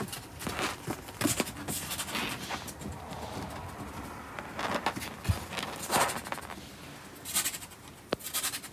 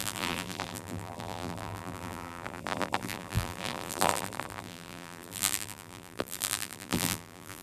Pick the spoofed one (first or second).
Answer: second